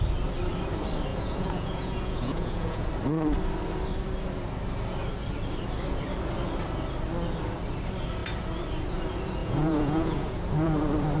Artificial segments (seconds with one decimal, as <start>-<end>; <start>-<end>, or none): 1.1-2.9; 9.4-10.4